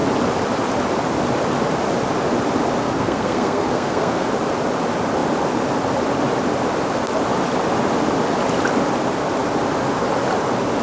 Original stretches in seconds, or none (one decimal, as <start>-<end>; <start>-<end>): 0.0-2.8; 4.3-10.8